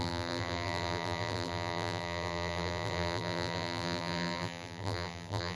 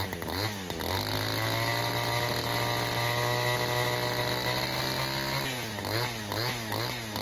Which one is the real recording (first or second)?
second